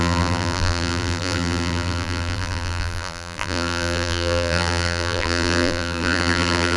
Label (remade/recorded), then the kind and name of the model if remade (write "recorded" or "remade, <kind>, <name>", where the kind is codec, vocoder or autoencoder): remade, vocoder, BigVGAN v2